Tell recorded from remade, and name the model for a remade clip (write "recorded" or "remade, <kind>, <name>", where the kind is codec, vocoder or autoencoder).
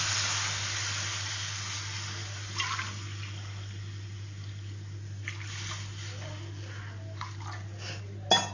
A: recorded